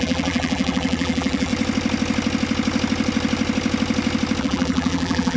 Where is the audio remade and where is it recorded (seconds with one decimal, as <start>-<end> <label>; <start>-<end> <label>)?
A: 0.0-1.5 remade; 1.5-4.4 recorded; 4.4-5.4 remade